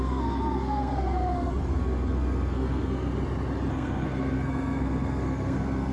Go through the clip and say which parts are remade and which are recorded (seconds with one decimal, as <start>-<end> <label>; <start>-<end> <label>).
0.0-3.1 remade; 3.1-3.7 recorded; 3.7-5.9 remade